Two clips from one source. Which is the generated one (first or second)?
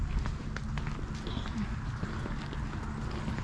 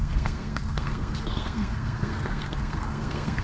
second